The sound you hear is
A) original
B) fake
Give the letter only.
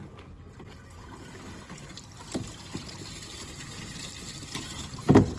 A